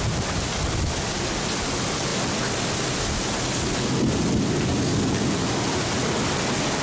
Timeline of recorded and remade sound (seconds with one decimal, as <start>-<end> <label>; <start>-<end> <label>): 0.0-6.8 recorded